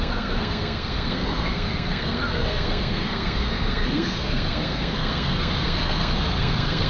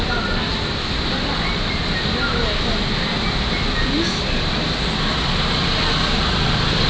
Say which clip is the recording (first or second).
second